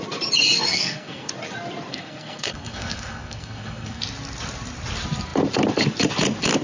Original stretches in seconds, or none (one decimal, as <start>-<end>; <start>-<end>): 0.0-0.7; 1.3-1.9; 4.0-6.6